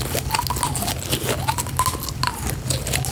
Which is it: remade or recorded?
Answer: recorded